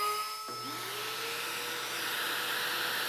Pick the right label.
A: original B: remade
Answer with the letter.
A